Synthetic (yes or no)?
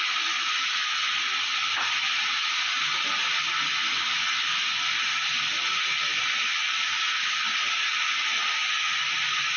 no